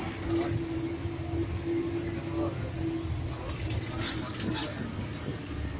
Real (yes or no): yes